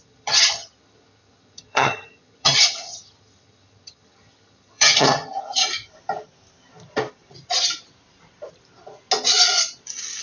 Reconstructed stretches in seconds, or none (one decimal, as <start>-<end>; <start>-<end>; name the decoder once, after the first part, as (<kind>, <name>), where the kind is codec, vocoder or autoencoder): 0.0-5.6 (vocoder, HiFi-GAN)